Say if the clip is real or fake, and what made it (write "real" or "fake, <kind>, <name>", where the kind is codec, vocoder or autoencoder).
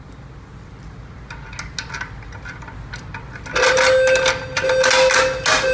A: real